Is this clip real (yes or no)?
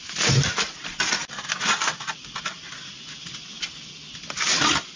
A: yes